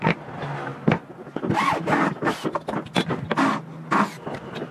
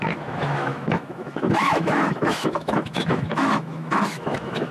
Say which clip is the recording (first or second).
first